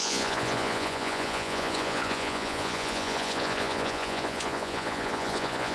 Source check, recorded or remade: remade